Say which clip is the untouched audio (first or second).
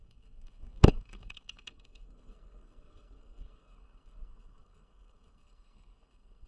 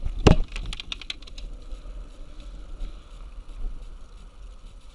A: second